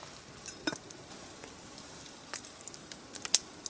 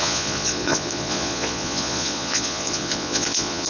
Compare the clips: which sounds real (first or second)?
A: first